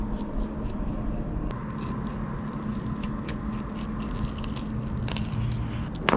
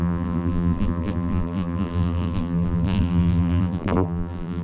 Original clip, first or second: first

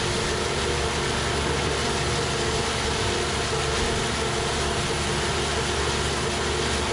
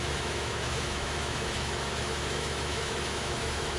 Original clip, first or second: first